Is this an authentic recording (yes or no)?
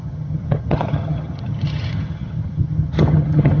no